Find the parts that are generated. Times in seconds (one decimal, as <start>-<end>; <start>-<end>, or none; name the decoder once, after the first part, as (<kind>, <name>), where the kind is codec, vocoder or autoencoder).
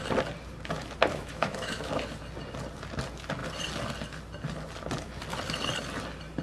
1.1-1.9 (autoencoder, DAC-VAE)